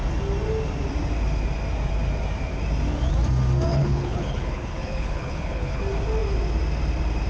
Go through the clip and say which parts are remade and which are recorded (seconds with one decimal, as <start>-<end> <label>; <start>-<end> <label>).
0.0-3.7 recorded; 3.7-5.8 remade; 5.8-7.3 recorded